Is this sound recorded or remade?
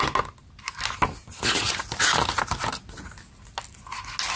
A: recorded